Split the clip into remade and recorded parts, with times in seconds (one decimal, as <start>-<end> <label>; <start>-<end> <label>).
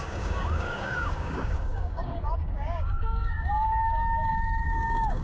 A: 0.0-5.2 remade